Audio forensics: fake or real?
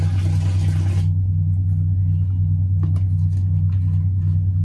real